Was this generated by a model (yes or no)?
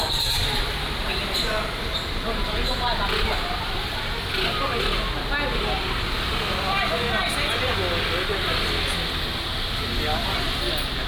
no